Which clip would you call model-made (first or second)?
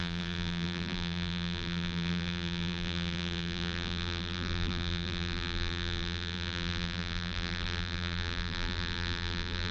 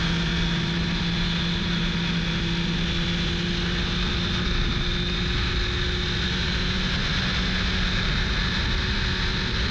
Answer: first